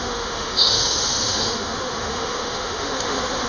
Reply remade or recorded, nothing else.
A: remade